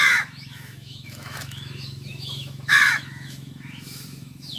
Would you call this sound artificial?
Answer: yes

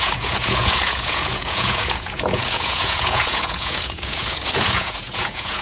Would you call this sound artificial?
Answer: yes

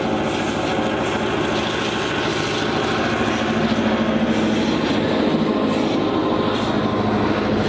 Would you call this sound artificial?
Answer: no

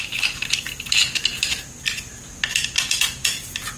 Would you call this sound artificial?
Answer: no